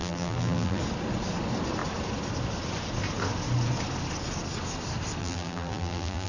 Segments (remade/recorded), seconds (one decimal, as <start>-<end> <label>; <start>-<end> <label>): 0.0-0.8 remade; 0.8-5.2 recorded; 5.2-6.3 remade